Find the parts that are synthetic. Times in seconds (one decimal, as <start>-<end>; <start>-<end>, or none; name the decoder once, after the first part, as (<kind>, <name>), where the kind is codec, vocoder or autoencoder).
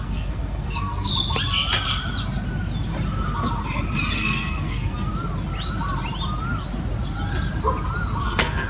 0.0-1.1 (codec, SNAC); 4.1-5.1; 8.2-8.7